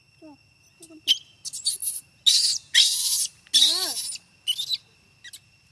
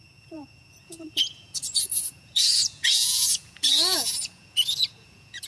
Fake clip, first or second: second